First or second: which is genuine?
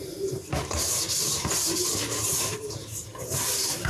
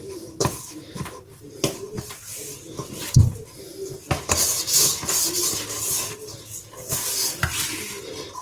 second